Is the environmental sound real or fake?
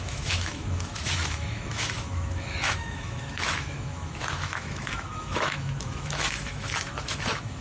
fake